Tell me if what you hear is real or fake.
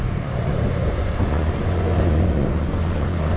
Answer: fake